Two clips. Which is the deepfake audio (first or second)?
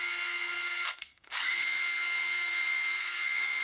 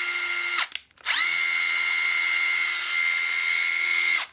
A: first